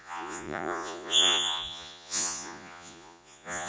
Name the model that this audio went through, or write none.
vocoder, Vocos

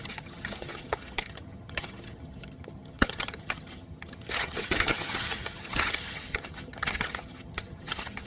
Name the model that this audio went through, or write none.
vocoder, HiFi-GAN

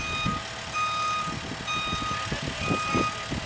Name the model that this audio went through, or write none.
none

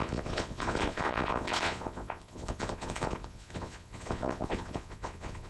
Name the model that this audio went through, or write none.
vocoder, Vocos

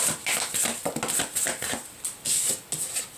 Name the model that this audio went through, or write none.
none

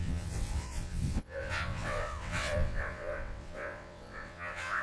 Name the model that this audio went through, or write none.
vocoder, WaveNeXt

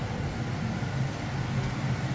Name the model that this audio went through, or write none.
none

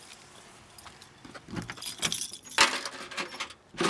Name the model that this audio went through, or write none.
none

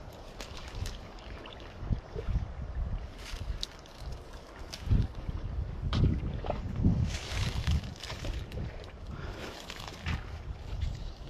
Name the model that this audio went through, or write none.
codec, DAC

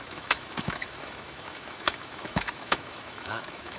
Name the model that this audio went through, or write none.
autoencoder, DAC-VAE